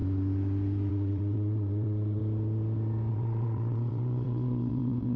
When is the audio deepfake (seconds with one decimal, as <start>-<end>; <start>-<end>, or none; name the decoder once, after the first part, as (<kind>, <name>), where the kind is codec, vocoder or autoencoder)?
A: 0.9-2.2 (vocoder, WaveNeXt); 3.1-5.2

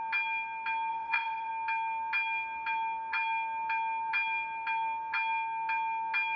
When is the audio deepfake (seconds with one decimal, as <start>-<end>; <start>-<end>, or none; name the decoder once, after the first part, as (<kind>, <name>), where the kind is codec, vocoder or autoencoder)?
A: 0.9-1.5 (vocoder, WaveNeXt)

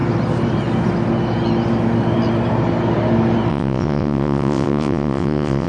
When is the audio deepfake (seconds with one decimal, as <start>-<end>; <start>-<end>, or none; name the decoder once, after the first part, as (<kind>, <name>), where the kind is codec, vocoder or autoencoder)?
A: 3.5-5.7 (vocoder, WaveNeXt)

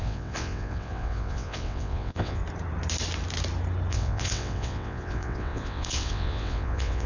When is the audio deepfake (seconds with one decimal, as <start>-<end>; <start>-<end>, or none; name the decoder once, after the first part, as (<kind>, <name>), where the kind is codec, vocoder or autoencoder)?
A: 0.0-2.4 (vocoder, WaveNeXt); 3.9-7.1

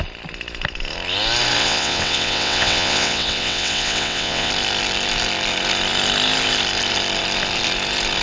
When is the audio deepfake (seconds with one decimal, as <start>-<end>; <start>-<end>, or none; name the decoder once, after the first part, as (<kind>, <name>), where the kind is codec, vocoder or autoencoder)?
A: 1.6-4.5 (vocoder, WaveNeXt)

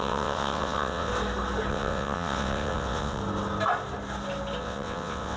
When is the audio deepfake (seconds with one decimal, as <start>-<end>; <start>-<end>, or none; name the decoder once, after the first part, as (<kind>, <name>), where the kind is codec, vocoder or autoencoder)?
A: 0.0-1.1 (vocoder, WaveNeXt); 1.7-3.2; 4.6-5.4